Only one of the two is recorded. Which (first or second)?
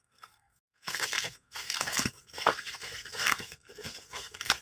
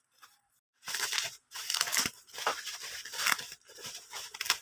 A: second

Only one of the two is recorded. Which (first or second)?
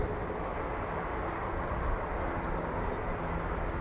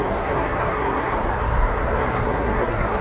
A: first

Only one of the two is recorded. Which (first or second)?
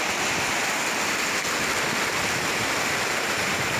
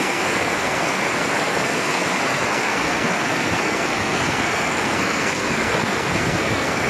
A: first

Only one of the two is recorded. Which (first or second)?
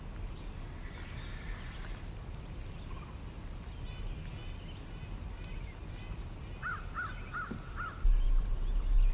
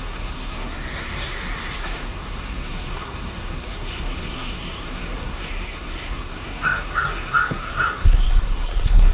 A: first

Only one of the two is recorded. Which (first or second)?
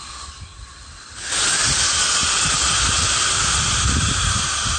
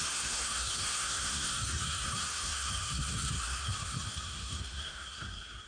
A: first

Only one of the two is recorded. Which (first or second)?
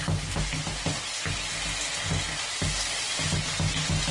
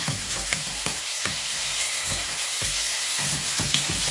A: first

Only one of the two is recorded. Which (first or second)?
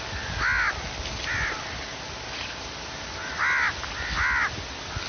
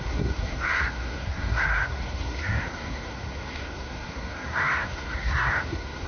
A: first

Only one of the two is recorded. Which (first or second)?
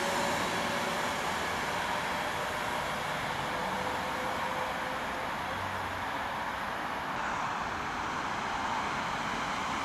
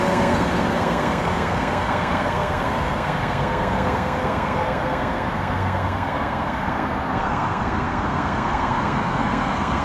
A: first